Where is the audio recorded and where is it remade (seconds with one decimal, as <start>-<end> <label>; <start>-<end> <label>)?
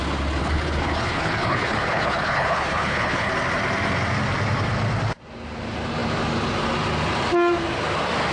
0.0-0.4 recorded; 0.4-3.3 remade; 3.3-8.3 recorded